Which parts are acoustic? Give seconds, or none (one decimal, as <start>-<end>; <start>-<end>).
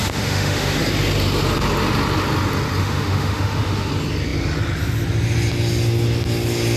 0.8-2.8; 3.9-6.8